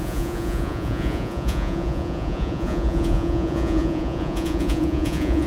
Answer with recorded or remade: remade